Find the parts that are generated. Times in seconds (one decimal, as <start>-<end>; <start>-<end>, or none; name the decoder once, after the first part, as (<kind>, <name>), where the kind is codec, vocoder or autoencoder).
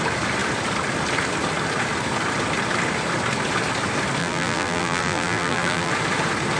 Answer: 4.2-5.9 (vocoder, BigVGAN v2)